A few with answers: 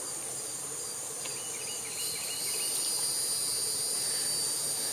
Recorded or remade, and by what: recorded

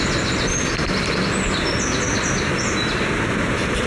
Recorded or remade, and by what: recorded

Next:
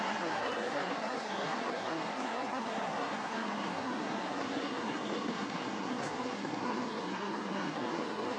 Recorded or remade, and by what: remade, codec, SNAC